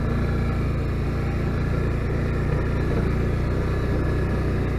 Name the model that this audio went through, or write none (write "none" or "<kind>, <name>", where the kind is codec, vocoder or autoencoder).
none